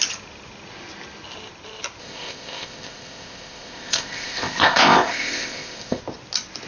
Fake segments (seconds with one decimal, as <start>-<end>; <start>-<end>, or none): 2.0-6.0

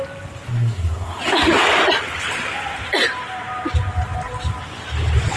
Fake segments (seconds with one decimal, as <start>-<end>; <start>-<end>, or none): 0.5-1.2

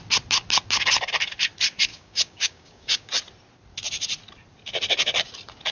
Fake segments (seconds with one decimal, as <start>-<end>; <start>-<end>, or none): 1.9-3.1

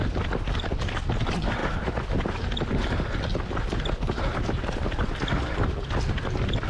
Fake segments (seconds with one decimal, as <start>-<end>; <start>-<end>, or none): none

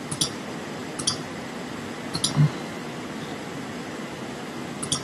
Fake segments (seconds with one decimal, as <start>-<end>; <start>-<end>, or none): none

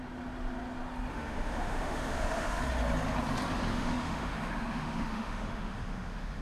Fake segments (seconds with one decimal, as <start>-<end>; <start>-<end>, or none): 1.1-2.6; 3.7-6.4

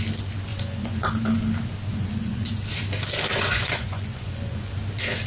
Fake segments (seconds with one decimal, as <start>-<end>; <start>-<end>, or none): 0.5-1.0; 1.9-2.5; 3.3-4.7